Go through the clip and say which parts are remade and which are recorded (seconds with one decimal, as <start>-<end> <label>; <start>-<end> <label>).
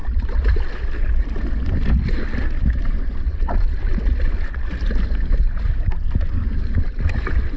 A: 0.0-7.6 recorded